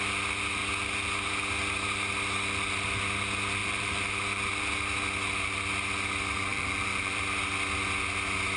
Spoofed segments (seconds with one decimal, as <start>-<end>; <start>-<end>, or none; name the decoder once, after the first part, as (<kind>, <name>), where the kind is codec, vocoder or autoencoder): 3.6-4.5 (vocoder, BigVGAN v2); 6.5-7.2